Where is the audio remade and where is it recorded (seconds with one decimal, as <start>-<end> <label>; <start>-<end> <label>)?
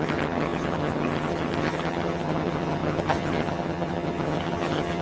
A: 0.0-5.0 remade